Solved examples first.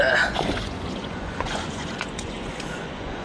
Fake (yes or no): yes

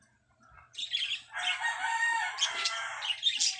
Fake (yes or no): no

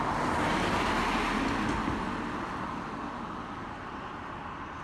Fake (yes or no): no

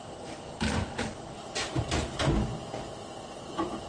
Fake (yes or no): no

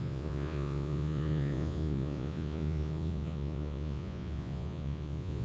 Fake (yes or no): yes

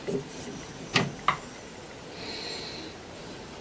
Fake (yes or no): no